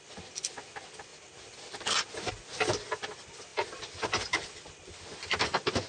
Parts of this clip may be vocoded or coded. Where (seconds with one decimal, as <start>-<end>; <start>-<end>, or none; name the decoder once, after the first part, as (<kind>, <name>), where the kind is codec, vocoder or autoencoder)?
1.1-2.3 (vocoder, BigVGAN v2)